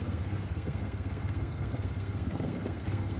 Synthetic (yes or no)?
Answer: yes